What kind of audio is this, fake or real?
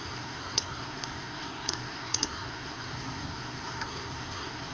fake